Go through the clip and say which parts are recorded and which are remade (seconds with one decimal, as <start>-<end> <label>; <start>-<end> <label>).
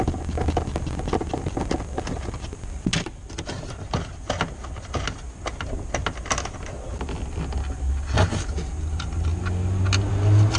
0.0-10.6 recorded